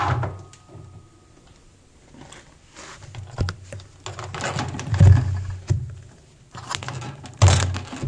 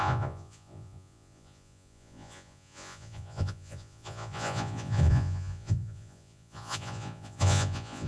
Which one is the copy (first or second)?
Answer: second